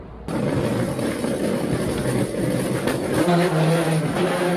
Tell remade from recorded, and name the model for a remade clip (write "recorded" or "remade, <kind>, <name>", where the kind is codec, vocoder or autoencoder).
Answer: recorded